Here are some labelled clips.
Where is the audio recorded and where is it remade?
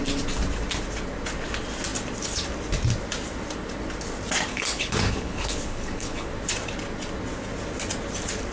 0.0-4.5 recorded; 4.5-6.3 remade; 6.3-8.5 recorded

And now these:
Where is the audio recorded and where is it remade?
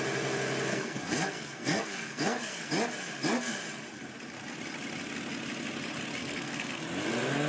0.0-0.7 recorded; 0.7-2.7 remade; 2.7-6.2 recorded; 6.2-6.8 remade; 6.8-7.5 recorded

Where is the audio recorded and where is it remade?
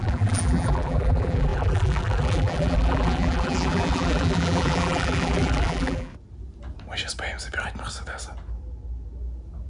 0.0-6.1 remade; 6.1-9.7 recorded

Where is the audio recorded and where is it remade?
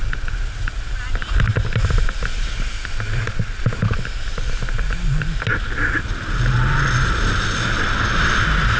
0.0-8.8 recorded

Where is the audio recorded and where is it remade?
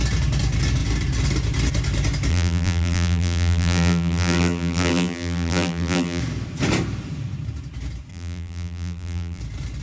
0.0-2.3 recorded; 2.3-6.2 remade; 6.2-8.1 recorded; 8.1-9.4 remade; 9.4-9.8 recorded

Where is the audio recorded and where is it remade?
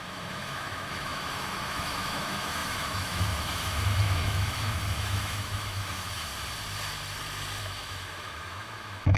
0.0-6.3 remade; 6.3-7.6 recorded; 7.6-9.2 remade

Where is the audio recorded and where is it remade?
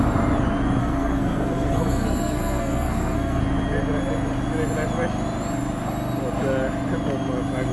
0.0-0.8 recorded; 0.8-3.4 remade; 3.4-7.7 recorded